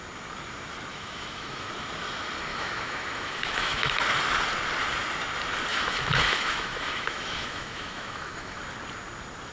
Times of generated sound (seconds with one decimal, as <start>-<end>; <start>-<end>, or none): 0.9-1.7; 2.5-4.0; 5.7-8.6

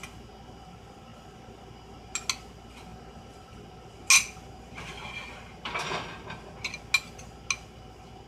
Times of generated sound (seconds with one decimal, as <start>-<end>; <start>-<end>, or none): none

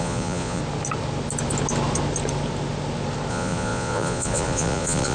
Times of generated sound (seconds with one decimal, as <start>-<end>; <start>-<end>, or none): 0.0-0.6; 3.3-5.1

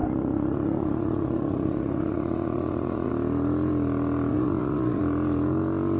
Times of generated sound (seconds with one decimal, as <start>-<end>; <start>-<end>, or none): 0.0-3.1; 4.3-5.0

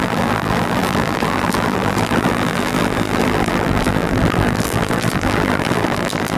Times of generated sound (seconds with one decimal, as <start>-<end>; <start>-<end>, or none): 0.0-6.4